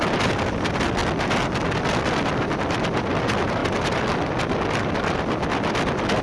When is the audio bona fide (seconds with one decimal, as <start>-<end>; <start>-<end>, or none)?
1.0-1.9; 3.6-6.2

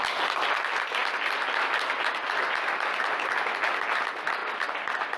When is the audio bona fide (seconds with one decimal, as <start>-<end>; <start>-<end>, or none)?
0.0-5.2

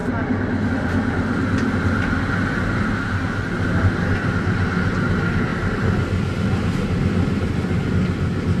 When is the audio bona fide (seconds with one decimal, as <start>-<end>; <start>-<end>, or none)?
0.0-8.6

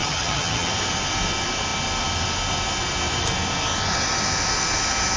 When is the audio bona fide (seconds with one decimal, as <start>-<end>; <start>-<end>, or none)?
0.7-5.2

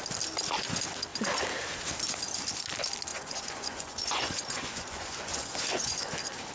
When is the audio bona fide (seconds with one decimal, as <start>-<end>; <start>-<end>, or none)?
0.0-3.1; 6.1-6.5

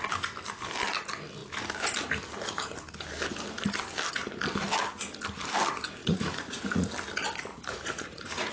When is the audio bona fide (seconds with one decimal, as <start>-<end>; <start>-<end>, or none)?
0.0-6.0; 6.9-7.5

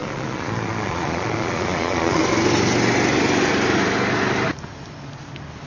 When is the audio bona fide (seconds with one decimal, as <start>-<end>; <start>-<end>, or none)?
2.2-5.7